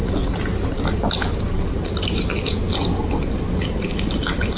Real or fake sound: real